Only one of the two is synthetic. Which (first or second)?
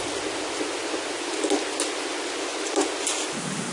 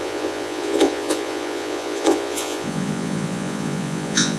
second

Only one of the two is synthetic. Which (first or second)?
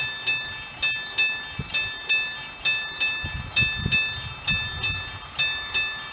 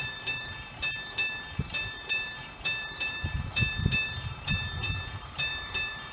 second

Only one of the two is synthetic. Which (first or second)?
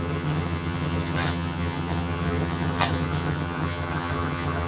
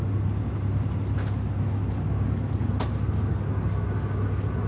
first